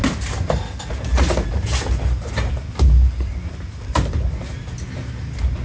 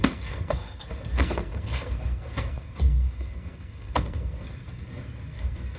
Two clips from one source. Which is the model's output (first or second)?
second